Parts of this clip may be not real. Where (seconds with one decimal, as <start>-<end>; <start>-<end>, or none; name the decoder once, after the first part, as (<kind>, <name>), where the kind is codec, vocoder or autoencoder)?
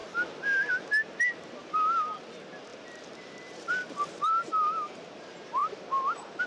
0.0-0.7 (vocoder, BigVGAN v2); 2.7-5.0; 5.6-6.5